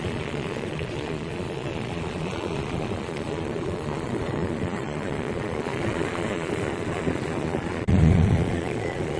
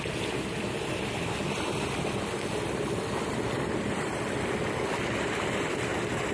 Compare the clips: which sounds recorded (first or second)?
second